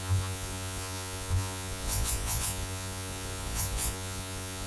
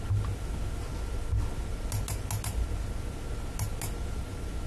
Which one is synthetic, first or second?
first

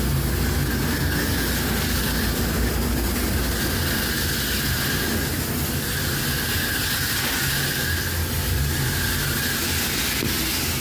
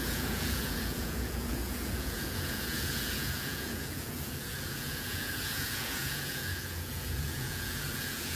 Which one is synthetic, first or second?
second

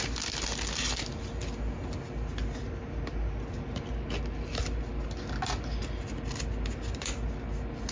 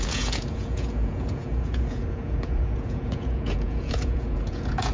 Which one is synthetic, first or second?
second